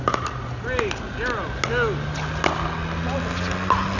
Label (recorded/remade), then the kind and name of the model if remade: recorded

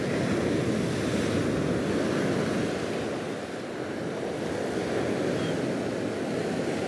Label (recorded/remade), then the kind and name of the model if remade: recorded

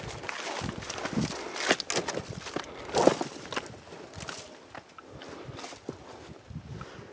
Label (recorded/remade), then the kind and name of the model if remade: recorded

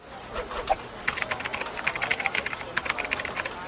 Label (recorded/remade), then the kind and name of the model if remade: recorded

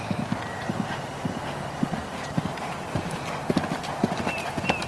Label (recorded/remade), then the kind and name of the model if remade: recorded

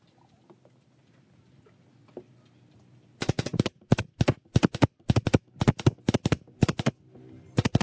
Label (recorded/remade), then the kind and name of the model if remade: recorded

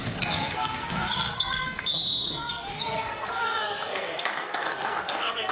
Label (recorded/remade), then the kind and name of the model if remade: remade, codec, SNAC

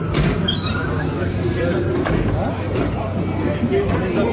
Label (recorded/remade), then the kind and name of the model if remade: recorded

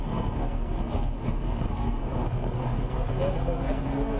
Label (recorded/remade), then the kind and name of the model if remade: remade, codec, SNAC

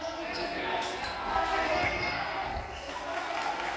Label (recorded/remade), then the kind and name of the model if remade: remade, codec, SNAC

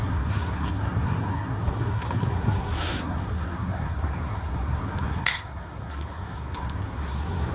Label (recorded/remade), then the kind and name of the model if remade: remade, codec, SNAC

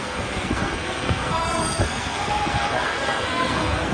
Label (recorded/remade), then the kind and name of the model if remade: remade, codec, SNAC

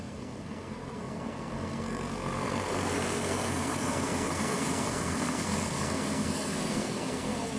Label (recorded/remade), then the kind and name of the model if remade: remade, codec, SNAC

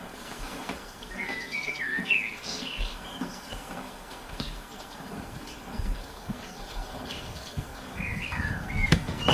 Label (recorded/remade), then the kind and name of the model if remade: remade, codec, SNAC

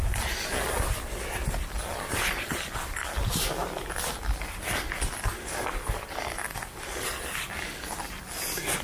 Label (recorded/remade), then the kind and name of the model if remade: recorded